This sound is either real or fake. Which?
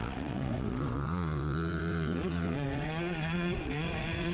fake